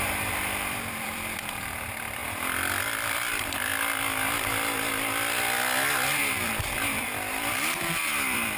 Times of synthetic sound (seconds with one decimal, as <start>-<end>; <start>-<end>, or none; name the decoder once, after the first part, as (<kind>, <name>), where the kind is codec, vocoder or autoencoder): 0.0-2.2 (vocoder, BigVGAN v2); 2.8-3.7; 6.3-8.6